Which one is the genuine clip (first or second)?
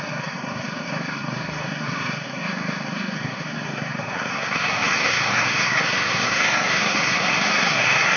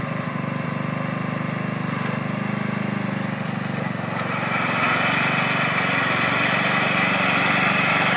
second